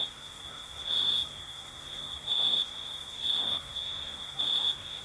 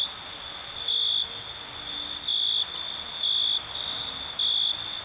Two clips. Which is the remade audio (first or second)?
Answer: first